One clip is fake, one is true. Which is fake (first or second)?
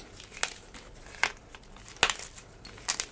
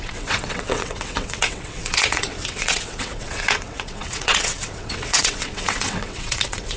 second